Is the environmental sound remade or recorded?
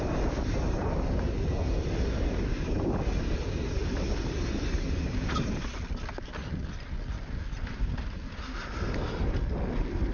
recorded